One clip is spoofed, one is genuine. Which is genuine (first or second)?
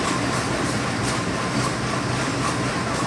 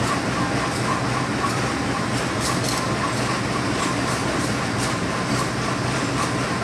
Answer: second